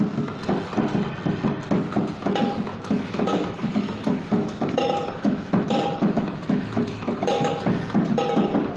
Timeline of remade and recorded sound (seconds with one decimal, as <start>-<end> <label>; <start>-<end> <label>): 0.0-2.7 recorded; 2.7-7.6 remade; 7.6-8.8 recorded